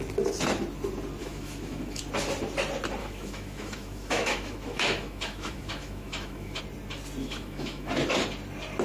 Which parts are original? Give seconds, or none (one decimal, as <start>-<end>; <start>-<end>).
0.0-1.2; 2.0-3.0; 6.6-7.2; 7.9-8.8

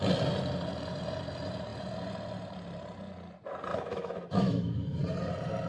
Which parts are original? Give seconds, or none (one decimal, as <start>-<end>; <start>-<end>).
0.0-3.7; 5.0-5.7

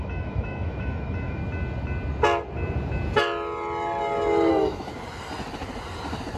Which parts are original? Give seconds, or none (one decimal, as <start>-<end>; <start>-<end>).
1.4-4.5; 4.9-6.4

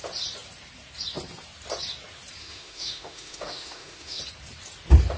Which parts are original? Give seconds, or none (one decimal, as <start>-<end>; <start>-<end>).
0.0-2.4; 4.2-5.2

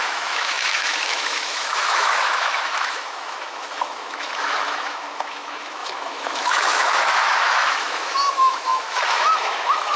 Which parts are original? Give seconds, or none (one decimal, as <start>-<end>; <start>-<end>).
none

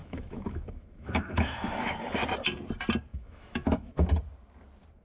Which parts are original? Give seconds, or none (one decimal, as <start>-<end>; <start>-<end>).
2.0-3.1; 4.1-5.0

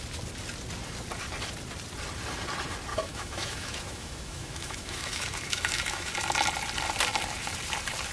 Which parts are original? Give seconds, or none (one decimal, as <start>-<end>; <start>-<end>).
0.0-2.9; 6.1-8.1

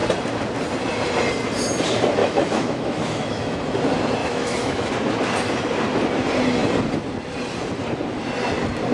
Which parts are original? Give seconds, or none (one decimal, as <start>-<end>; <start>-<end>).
0.0-2.2; 3.6-4.2; 4.9-8.9